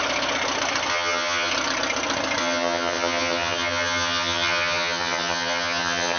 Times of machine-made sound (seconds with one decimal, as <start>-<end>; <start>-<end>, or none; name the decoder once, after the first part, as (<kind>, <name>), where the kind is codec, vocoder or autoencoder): 0.9-1.5 (vocoder, HiFi-GAN); 2.4-6.2